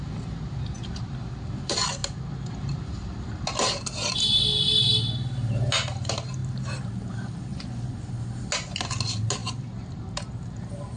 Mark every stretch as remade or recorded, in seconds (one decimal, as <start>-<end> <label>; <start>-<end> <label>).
0.0-7.5 recorded; 7.5-8.1 remade; 8.1-11.0 recorded